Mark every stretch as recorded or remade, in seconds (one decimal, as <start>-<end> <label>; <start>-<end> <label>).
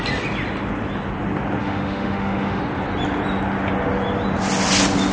0.0-1.6 recorded; 1.6-2.6 remade; 2.6-5.1 recorded